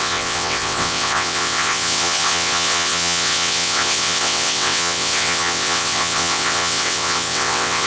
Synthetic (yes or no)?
yes